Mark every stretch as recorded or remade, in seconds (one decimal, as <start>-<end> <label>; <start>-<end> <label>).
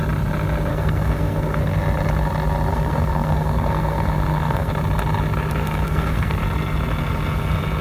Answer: 0.0-0.7 recorded; 0.7-1.6 remade; 1.6-2.7 recorded; 2.7-4.7 remade; 4.7-5.6 recorded; 5.6-6.4 remade; 6.4-7.8 recorded